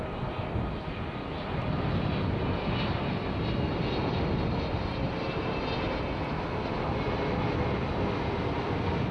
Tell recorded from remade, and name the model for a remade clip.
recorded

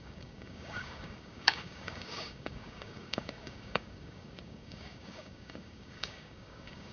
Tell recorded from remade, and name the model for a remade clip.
remade, codec, DAC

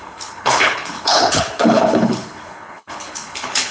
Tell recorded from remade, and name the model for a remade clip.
remade, codec, HILCodec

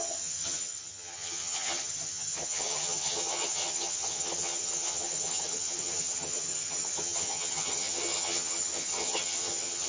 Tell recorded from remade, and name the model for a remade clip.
remade, vocoder, HiFi-GAN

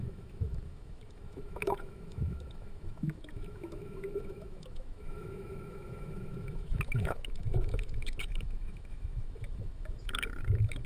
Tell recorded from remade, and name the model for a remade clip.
remade, autoencoder, DAC-VAE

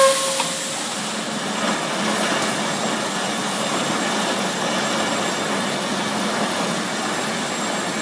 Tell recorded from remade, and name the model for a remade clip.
recorded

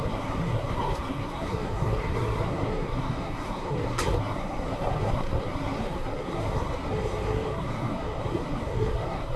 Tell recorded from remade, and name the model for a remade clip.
remade, codec, SNAC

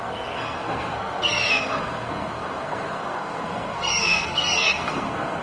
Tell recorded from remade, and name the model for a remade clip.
remade, codec, SNAC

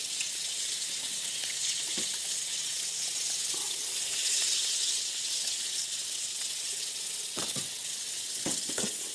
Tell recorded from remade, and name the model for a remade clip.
remade, vocoder, WaveNeXt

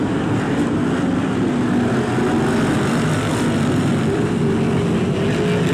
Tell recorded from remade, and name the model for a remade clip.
recorded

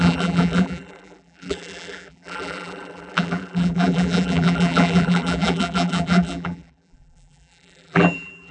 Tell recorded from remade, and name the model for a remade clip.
remade, vocoder, BigVGAN v2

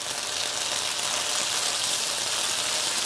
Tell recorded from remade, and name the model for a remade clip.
recorded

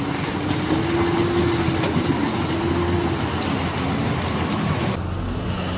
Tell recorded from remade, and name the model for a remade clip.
recorded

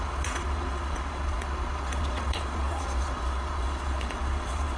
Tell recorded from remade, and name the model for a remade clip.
remade, vocoder, Vocos